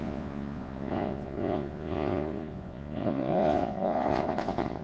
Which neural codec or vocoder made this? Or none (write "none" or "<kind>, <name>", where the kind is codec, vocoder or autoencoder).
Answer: vocoder, Vocos